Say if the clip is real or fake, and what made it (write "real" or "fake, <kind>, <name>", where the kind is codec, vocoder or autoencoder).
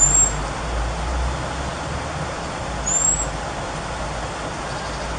real